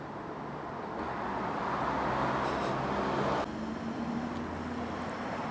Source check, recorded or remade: recorded